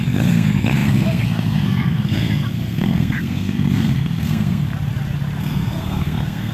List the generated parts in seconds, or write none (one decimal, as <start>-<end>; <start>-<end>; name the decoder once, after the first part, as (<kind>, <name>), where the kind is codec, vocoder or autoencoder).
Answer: 0.0-4.7 (codec, SNAC); 5.4-6.5